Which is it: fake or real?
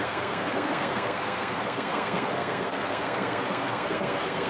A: fake